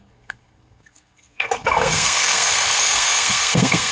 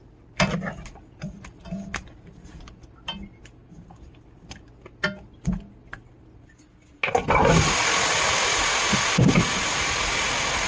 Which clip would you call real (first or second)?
second